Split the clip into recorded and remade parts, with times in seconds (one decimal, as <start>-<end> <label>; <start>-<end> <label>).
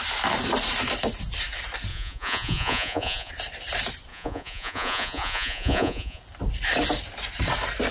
0.0-1.9 recorded; 1.9-3.3 remade; 3.3-4.1 recorded; 4.1-6.2 remade; 6.2-7.9 recorded